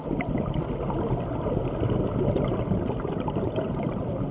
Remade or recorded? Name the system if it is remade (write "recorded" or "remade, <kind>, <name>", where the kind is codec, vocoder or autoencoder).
recorded